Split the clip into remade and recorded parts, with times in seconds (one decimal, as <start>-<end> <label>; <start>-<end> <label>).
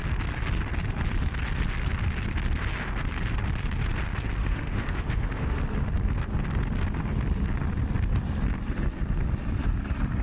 0.0-4.4 recorded; 4.4-5.6 remade; 5.6-10.2 recorded